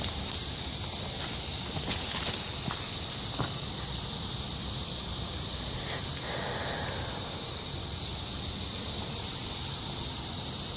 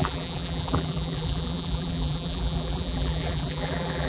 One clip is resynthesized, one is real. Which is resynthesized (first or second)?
second